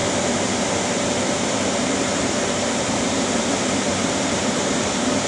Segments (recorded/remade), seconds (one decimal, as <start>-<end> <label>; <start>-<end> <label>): 0.0-5.3 remade